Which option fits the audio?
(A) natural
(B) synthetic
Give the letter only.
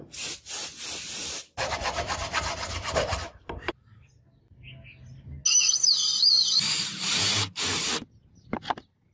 A